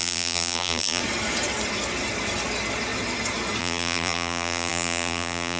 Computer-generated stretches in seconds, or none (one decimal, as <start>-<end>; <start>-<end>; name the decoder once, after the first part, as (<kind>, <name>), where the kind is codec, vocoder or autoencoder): 0.0-1.0 (vocoder, BigVGAN v2); 3.6-5.6